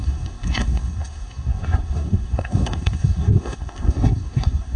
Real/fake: fake